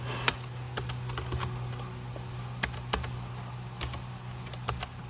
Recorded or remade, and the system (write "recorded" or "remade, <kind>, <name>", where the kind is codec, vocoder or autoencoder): recorded